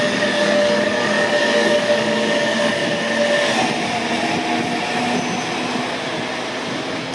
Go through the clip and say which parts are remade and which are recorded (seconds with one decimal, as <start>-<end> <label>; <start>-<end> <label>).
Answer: 0.0-2.8 remade; 2.8-7.1 recorded